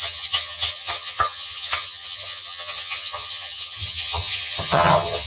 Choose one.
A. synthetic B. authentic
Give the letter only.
A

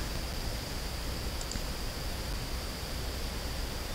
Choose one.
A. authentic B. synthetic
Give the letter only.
A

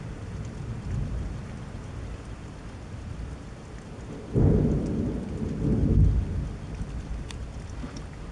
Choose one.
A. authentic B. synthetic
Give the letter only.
A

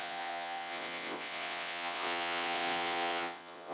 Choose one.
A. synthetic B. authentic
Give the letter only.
A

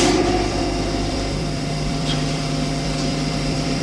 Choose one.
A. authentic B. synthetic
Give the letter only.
B